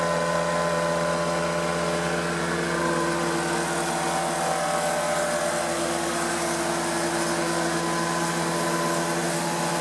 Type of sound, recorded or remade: recorded